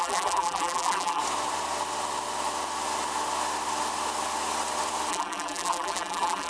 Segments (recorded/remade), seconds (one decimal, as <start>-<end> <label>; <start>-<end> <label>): 0.0-1.2 remade; 1.2-5.1 recorded; 5.1-6.5 remade